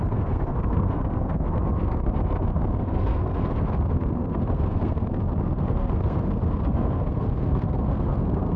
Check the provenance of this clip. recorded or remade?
remade